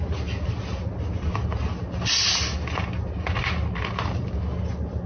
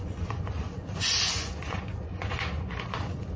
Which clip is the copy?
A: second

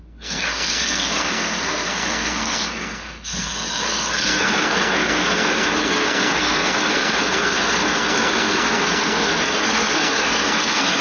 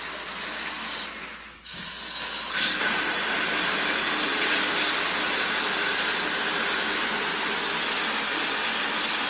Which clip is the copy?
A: first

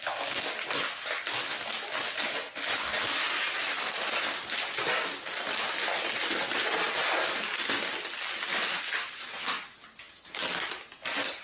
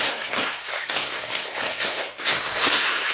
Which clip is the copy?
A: second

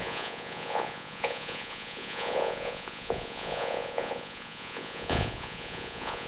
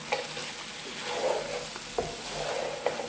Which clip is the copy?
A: first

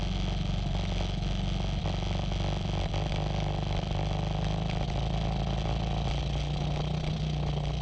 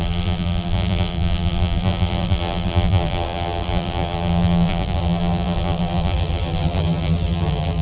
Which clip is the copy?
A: second